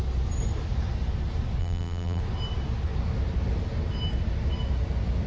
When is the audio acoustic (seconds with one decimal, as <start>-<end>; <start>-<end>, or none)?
0.0-1.6; 2.2-5.3